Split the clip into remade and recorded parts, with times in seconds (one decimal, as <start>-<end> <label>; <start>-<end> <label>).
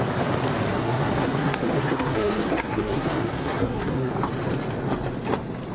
0.0-0.7 recorded; 0.7-4.1 remade; 4.1-5.7 recorded